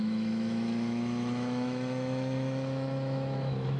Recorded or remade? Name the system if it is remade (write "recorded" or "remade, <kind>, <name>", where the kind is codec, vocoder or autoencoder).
remade, autoencoder, DAC-VAE